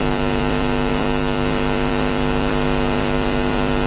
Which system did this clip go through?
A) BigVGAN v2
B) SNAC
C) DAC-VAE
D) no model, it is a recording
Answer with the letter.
A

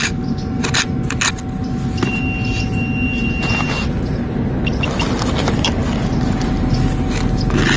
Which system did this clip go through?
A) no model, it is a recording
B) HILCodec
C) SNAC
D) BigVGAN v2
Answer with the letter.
A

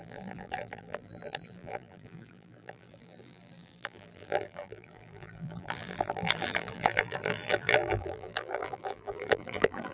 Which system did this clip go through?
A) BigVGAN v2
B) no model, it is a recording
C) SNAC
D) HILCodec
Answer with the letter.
A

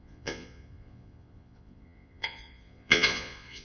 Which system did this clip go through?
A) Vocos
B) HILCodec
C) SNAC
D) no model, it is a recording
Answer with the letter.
A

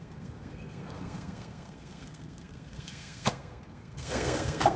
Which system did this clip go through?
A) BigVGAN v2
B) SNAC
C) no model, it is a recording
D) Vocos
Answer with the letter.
B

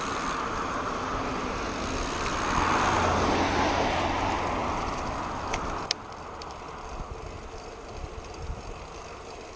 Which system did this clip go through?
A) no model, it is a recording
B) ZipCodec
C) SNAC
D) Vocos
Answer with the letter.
A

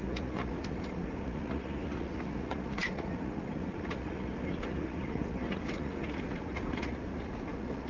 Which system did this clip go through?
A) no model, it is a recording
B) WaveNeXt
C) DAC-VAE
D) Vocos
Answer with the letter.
D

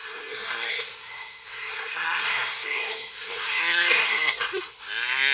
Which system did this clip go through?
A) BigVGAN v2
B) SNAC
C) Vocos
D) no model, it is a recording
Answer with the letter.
B